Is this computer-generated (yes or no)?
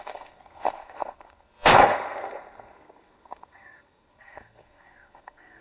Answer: yes